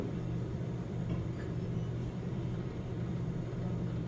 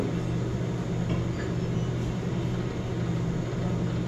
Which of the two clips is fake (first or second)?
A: first